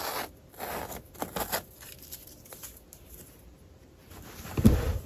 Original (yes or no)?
yes